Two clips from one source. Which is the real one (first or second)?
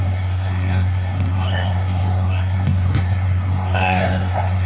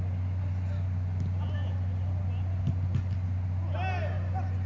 second